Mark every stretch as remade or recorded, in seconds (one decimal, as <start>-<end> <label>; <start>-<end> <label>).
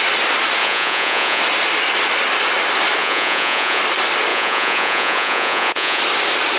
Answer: 0.0-0.6 recorded; 0.6-1.4 remade; 1.4-3.0 recorded; 3.0-3.8 remade; 3.8-4.3 recorded; 4.3-6.0 remade; 6.0-6.6 recorded